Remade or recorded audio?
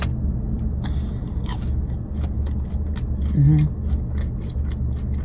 recorded